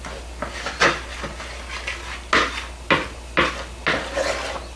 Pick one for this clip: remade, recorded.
recorded